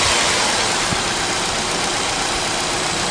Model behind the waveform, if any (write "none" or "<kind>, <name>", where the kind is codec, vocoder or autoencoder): none